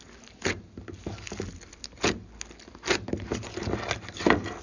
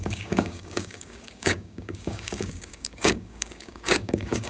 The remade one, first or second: second